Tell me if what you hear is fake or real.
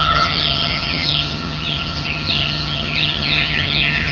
fake